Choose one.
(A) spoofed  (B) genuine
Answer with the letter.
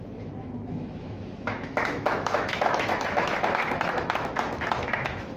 A